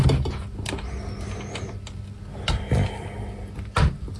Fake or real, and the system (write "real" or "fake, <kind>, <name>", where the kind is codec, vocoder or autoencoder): real